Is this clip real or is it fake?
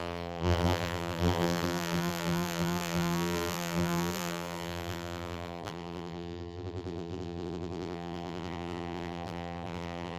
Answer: fake